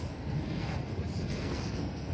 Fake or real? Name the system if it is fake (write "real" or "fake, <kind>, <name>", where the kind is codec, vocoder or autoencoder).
fake, codec, SNAC